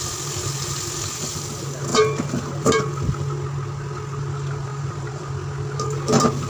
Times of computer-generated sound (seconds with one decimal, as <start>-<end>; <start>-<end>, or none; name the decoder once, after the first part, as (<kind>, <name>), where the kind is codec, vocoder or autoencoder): 1.9-2.8 (vocoder, BigVGAN v2); 4.7-5.3